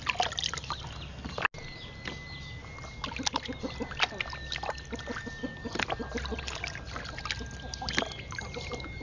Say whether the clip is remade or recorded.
recorded